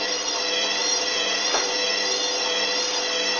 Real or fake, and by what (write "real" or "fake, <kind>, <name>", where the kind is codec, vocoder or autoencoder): fake, vocoder, BigVGAN v2